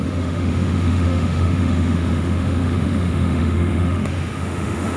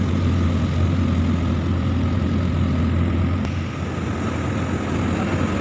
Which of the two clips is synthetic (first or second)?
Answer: first